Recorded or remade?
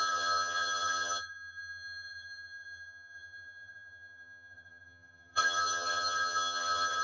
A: remade